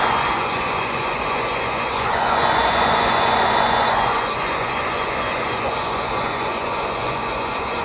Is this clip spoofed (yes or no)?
yes